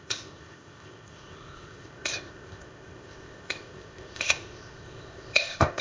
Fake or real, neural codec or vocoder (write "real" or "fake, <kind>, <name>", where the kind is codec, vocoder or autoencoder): fake, codec, ZipCodec